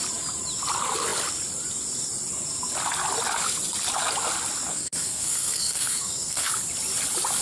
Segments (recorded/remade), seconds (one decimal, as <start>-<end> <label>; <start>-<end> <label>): 0.0-4.7 recorded; 4.7-6.5 remade; 6.5-7.4 recorded